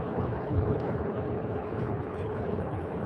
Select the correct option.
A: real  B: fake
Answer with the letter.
B